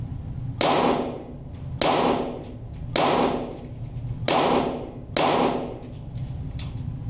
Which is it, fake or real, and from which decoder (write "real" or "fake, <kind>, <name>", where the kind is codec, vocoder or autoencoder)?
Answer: real